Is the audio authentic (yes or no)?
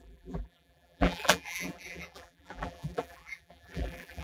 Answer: no